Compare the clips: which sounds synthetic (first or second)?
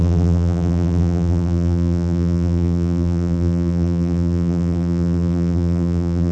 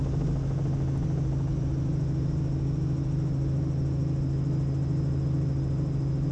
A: first